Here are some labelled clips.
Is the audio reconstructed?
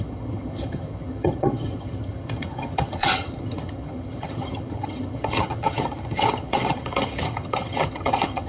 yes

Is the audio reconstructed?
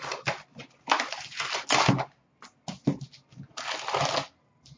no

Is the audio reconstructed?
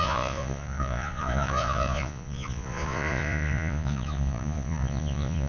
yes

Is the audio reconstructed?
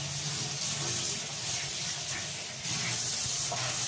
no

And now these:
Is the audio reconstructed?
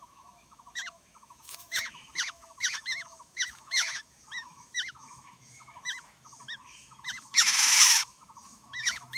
yes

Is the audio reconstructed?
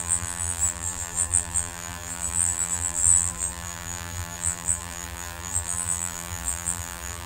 yes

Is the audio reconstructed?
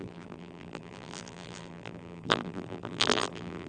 yes